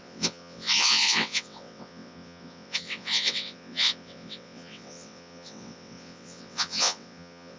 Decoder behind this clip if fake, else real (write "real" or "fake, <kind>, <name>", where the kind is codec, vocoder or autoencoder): fake, vocoder, WaveNeXt